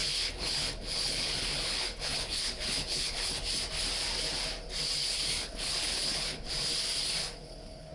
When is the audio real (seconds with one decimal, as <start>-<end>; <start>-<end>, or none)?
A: 3.4-5.0; 6.5-7.2